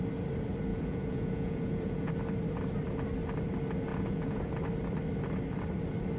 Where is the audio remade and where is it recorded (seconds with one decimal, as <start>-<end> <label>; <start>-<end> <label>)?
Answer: 0.0-0.7 recorded; 0.7-2.1 remade; 2.1-3.9 recorded; 3.9-4.5 remade; 4.5-6.2 recorded